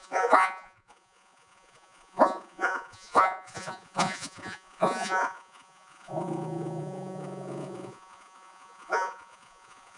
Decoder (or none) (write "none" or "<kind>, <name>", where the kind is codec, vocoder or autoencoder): vocoder, Vocos